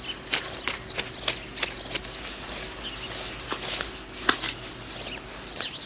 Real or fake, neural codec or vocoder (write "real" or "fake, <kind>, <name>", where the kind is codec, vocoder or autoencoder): real